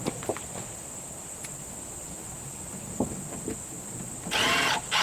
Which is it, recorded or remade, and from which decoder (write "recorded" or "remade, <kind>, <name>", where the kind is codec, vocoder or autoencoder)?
recorded